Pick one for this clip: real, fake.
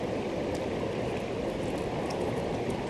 real